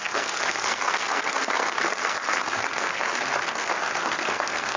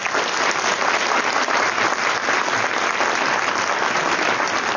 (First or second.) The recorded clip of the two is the second